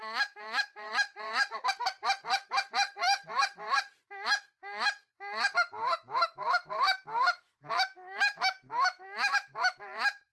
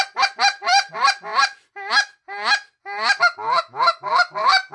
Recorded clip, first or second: second